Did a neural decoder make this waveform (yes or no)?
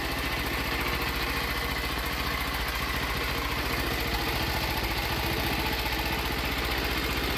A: no